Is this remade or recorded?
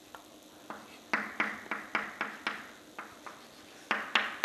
recorded